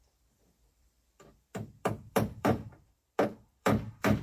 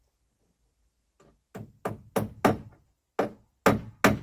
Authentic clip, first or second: second